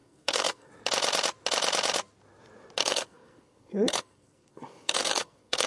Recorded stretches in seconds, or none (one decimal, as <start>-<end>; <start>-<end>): 0.7-2.8